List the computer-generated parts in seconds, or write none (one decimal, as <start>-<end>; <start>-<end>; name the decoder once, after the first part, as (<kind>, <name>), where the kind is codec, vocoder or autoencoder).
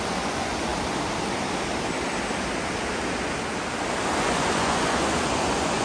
0.0-0.7 (vocoder, Vocos); 4.2-5.8